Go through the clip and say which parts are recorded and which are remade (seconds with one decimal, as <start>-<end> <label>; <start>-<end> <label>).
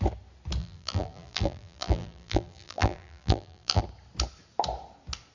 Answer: 0.0-0.6 recorded; 0.6-3.8 remade; 3.8-5.3 recorded